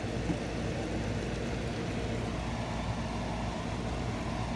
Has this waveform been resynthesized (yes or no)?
no